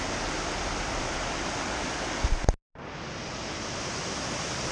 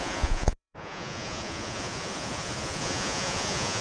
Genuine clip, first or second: first